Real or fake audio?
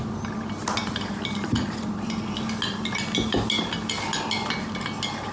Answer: real